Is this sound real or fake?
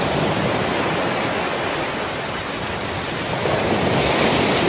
real